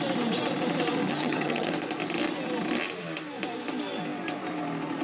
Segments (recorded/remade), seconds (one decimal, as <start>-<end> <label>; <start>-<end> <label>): 0.0-1.1 recorded; 1.1-1.7 remade; 1.7-5.0 recorded